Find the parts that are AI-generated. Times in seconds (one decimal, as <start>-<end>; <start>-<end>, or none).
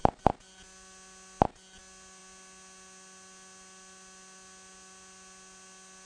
none